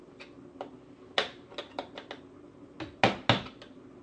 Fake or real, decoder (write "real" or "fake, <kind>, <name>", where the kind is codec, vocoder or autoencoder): real